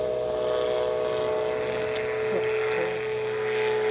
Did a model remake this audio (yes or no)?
no